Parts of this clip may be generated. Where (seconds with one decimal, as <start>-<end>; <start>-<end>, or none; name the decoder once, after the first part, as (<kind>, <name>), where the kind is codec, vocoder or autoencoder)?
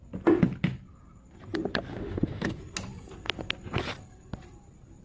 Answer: 1.9-2.6 (autoencoder, DAC-VAE)